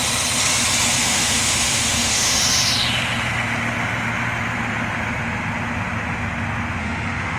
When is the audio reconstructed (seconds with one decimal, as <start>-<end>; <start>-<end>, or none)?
1.0-2.4; 6.8-7.4